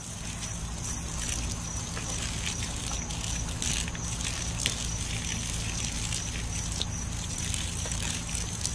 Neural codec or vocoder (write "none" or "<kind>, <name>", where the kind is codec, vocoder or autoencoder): none